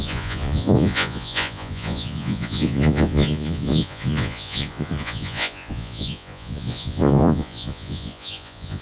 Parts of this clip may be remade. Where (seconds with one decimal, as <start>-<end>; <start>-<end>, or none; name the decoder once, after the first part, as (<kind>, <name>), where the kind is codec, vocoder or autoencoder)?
0.0-8.8 (vocoder, Vocos)